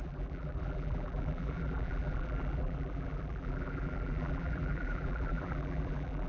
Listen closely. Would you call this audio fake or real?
fake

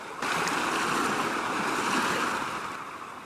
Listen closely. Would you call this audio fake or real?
real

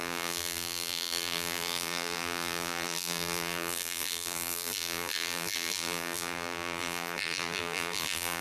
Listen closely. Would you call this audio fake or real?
fake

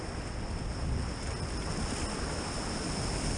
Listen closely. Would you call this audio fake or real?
real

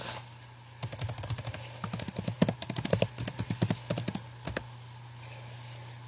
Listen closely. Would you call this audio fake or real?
real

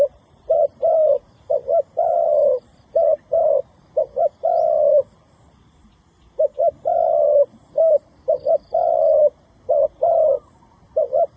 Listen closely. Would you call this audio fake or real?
fake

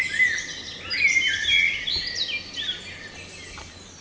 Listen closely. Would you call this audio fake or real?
real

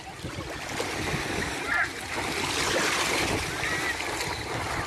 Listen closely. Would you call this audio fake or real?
real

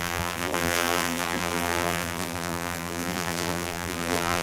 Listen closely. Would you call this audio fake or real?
fake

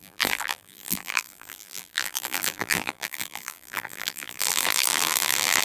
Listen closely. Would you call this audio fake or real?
fake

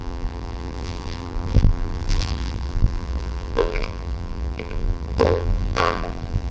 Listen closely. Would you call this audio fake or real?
fake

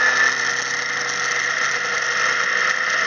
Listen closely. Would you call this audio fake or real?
real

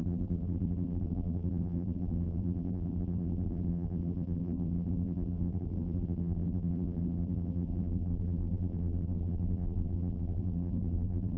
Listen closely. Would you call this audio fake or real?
fake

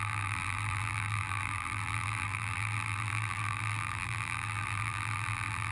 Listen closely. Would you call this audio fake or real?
fake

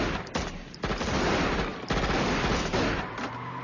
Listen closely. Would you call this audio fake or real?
real